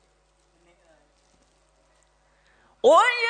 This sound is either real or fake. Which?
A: real